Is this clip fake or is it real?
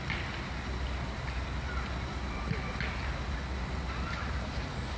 real